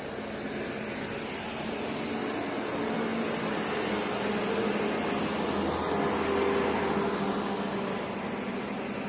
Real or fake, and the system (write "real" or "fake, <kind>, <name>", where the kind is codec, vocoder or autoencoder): real